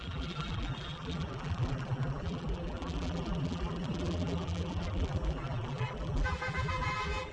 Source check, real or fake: fake